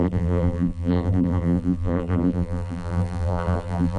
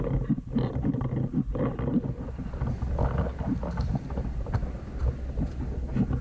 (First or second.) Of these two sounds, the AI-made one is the first